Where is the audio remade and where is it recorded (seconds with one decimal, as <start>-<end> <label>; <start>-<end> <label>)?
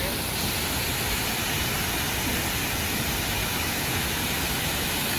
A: 0.0-3.4 recorded; 3.4-5.2 remade